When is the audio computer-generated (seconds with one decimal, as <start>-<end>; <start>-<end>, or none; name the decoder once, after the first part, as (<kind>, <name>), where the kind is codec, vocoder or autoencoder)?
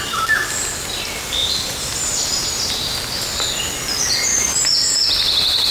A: 1.4-2.7 (vocoder, BigVGAN v2)